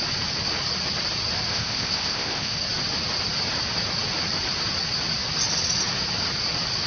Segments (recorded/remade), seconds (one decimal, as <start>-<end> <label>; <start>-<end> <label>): 0.0-1.5 recorded; 1.5-2.6 remade; 2.6-6.9 recorded